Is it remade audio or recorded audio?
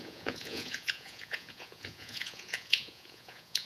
remade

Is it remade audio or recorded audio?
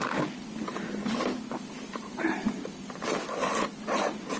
recorded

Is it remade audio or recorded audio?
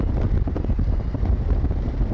recorded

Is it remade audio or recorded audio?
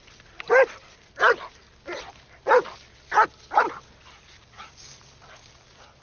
recorded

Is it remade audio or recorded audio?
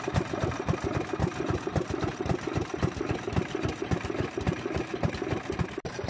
recorded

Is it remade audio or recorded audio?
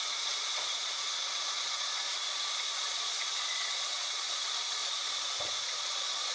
remade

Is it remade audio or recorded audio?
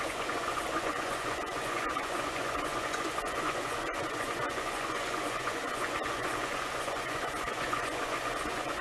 remade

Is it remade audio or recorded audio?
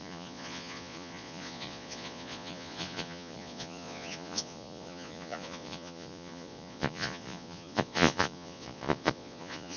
remade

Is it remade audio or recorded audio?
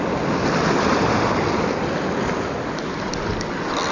recorded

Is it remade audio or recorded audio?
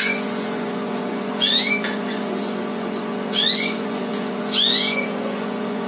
remade